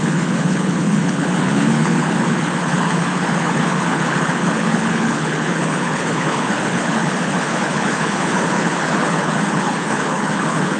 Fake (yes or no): yes